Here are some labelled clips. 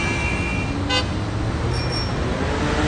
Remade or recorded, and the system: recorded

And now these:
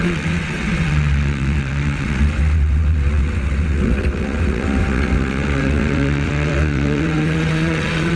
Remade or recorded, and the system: remade, vocoder, WaveNeXt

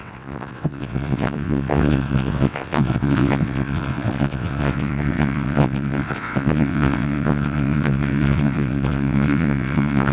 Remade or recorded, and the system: remade, vocoder, WaveNeXt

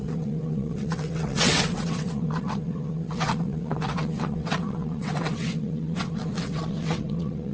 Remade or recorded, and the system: remade, vocoder, WaveNeXt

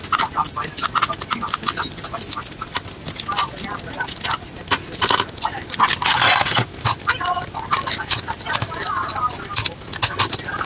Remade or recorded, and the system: recorded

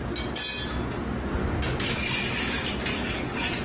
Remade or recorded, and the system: recorded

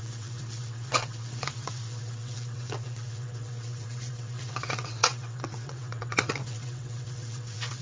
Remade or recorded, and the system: remade, vocoder, WaveNeXt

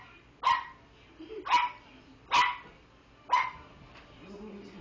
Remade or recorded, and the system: recorded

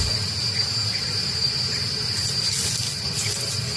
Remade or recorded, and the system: recorded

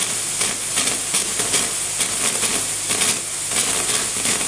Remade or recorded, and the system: recorded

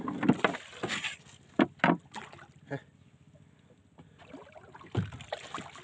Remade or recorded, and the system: recorded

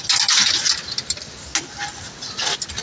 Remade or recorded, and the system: recorded